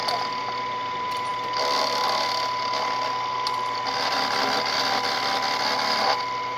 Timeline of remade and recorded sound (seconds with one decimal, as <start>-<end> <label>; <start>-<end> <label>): 0.0-6.6 recorded